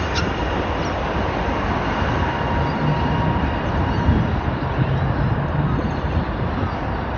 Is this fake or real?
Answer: real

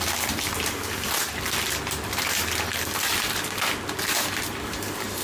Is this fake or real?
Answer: real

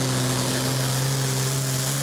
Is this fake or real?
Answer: real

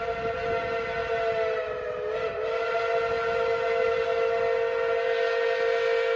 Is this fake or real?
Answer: real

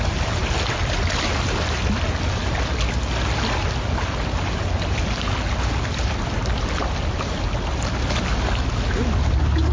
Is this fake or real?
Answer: real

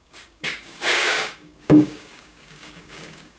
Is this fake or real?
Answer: fake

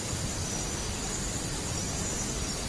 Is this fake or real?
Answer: real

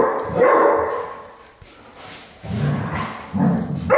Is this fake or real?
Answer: real